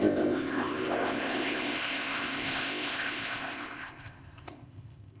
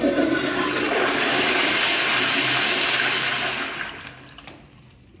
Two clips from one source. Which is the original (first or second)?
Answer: second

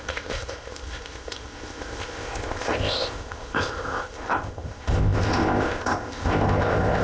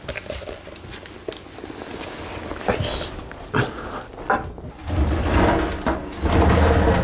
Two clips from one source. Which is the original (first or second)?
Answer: second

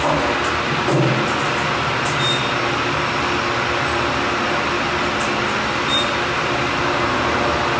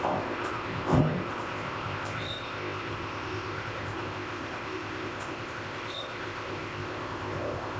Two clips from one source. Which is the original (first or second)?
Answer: first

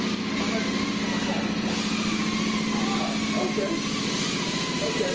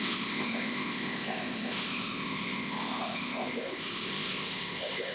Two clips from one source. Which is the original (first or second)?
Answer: first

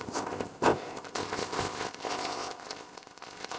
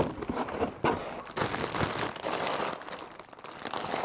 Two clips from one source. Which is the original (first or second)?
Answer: second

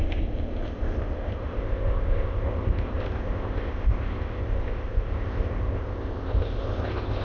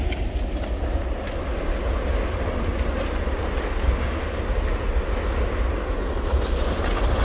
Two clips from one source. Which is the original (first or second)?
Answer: second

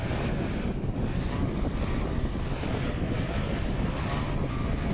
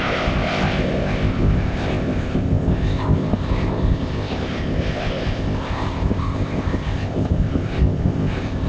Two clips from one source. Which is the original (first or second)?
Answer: first